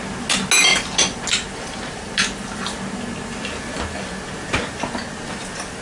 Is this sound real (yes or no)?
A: yes